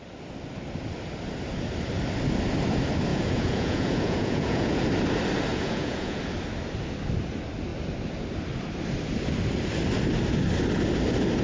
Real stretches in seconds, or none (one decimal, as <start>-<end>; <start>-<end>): 0.0-3.1; 4.8-5.5; 6.2-11.4